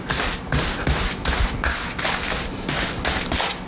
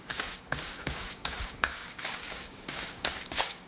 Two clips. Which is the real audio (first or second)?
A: first